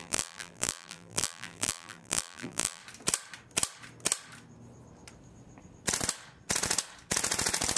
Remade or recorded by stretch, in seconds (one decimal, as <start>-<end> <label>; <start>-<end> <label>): 0.0-2.8 remade; 2.8-7.8 recorded